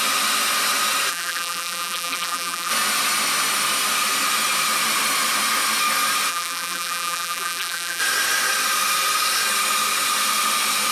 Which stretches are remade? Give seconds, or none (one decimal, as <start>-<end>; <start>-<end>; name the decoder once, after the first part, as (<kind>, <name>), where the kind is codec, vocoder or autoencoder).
1.1-2.7 (vocoder, BigVGAN v2); 6.3-8.0